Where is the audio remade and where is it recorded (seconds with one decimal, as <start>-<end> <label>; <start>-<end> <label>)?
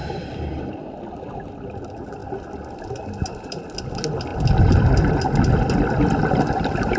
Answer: 0.0-0.7 remade; 0.7-7.0 recorded